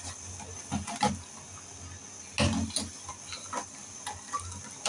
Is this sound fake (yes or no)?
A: no